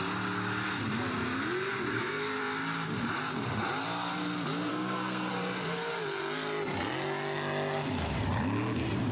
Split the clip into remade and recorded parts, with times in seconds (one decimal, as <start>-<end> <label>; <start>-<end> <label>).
0.0-1.9 recorded; 1.9-2.4 remade; 2.4-4.7 recorded; 4.7-5.3 remade; 5.3-9.1 recorded